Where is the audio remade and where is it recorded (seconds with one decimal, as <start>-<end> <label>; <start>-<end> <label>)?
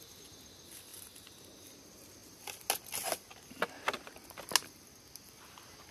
0.0-5.9 recorded